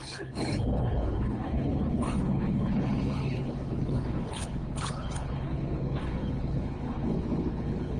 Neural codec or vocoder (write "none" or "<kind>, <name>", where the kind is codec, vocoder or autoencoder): codec, HILCodec